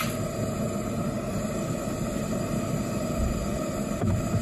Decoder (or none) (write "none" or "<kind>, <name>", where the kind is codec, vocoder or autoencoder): none